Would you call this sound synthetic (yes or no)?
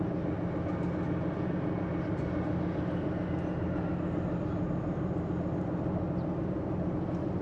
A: no